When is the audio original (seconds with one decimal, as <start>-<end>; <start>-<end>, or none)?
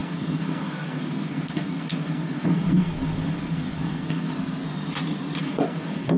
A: 4.6-5.4